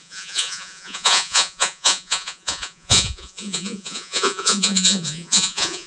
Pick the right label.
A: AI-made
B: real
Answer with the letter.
A